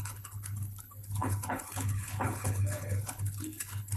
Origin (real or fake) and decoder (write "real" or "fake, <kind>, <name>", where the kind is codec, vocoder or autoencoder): fake, codec, HILCodec